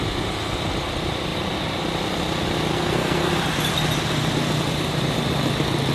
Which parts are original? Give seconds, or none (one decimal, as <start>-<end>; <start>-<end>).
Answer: 0.0-2.7; 3.3-5.9